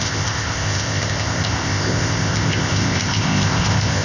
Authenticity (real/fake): fake